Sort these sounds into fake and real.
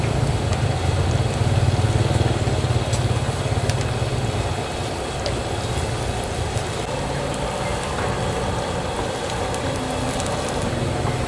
real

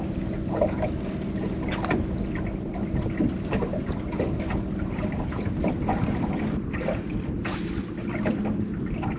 real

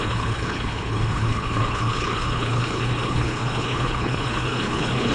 fake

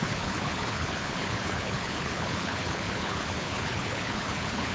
fake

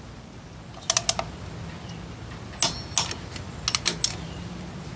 real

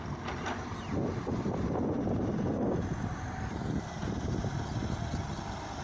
real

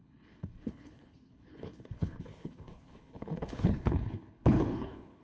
fake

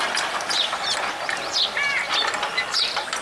real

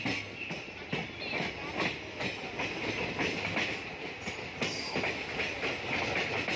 real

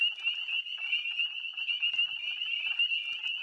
real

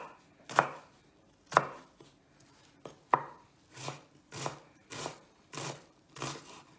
real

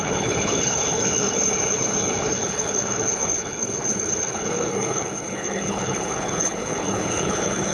fake